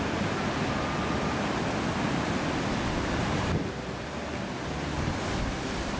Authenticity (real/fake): real